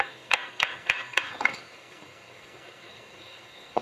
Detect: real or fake fake